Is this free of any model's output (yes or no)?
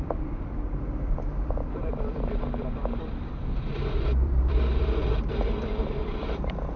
no